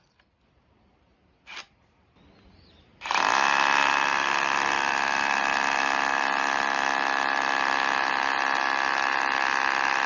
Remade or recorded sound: recorded